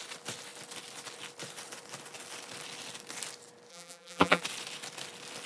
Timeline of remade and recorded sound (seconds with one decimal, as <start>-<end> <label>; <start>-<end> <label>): 0.0-3.7 recorded; 3.7-4.4 remade; 4.4-5.5 recorded